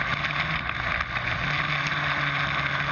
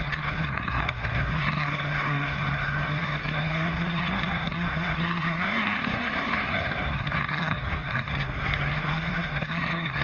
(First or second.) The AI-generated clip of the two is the second